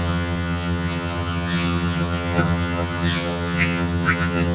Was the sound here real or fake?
fake